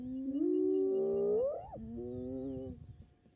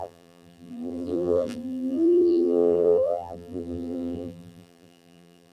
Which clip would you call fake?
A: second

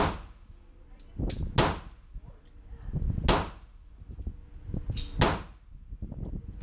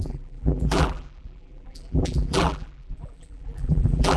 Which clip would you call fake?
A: second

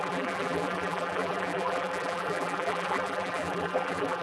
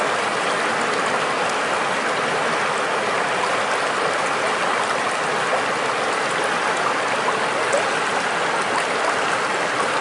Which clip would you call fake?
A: first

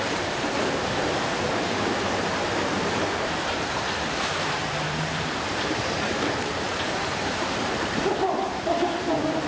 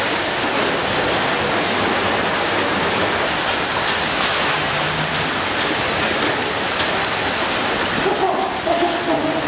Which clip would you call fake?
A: first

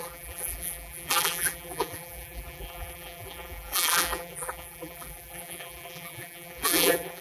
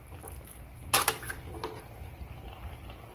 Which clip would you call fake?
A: first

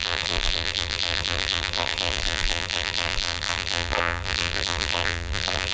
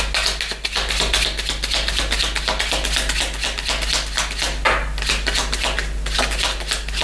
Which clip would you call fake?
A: first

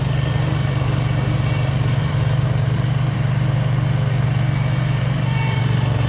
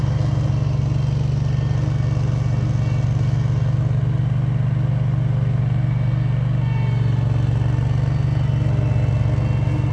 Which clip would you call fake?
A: first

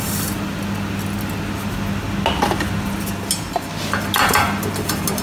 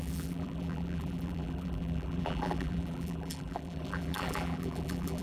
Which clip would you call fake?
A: second